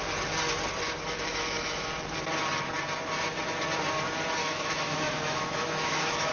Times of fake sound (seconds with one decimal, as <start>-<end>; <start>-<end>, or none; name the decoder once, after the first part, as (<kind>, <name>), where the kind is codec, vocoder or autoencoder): 1.3-1.9 (autoencoder, DAC-VAE); 4.4-6.3